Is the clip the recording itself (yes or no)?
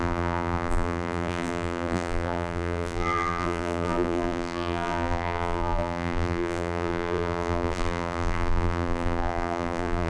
no